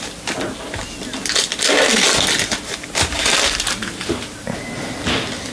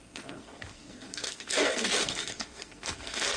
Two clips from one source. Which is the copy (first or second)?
second